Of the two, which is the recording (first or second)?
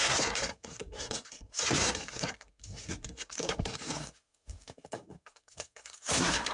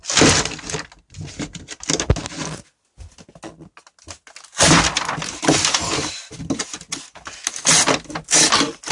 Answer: second